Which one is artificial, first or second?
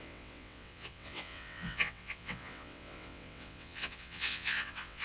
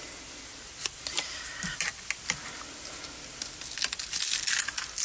first